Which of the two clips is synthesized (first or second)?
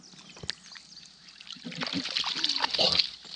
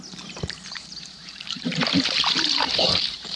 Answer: second